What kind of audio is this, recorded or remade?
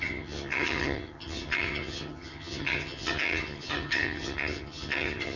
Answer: remade